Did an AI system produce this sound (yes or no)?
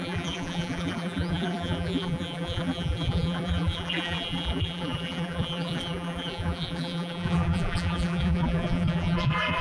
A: yes